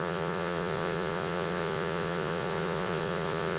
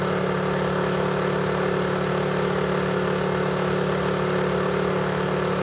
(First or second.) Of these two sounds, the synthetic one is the first